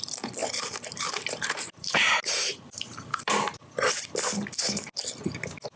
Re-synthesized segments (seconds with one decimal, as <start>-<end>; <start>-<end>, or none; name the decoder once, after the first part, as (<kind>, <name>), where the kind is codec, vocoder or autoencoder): 0.4-3.9 (vocoder, BigVGAN v2)